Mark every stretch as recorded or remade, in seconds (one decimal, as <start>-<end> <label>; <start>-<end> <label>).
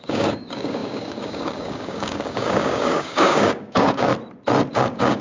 0.0-4.1 remade; 4.1-4.7 recorded; 4.7-5.2 remade